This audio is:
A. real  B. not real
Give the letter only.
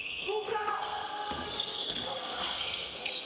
B